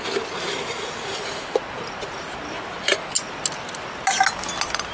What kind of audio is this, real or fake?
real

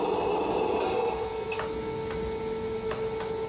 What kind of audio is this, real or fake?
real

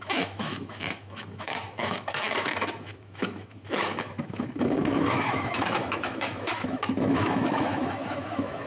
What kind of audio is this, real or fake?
fake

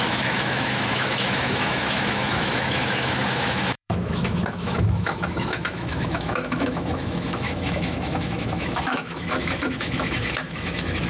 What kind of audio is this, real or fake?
fake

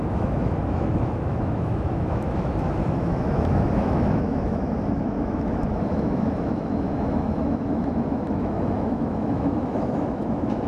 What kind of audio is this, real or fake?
fake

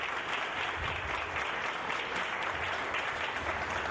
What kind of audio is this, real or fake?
real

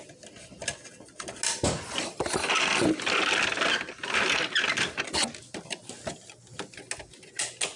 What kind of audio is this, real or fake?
real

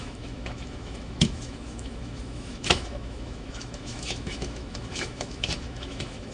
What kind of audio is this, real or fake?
fake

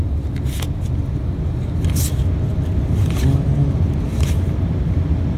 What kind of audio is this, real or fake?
real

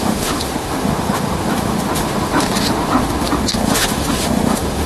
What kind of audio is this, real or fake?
fake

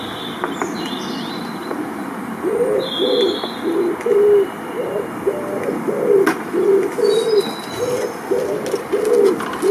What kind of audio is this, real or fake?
real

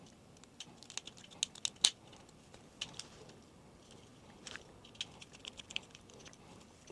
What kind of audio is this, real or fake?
real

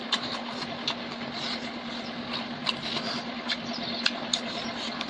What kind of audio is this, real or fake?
real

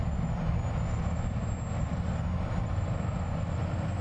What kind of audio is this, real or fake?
real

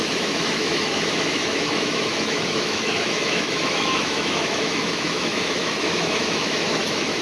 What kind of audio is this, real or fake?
fake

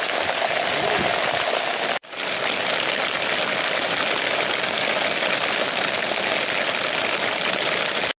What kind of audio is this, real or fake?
real